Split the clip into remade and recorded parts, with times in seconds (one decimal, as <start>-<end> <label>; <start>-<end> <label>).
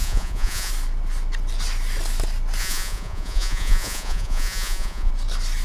0.0-0.7 remade; 0.7-2.6 recorded; 2.6-5.1 remade; 5.1-5.6 recorded